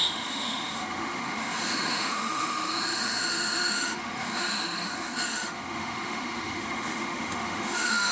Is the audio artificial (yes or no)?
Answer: yes